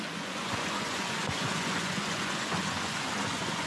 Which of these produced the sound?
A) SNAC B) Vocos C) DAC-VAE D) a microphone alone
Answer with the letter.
B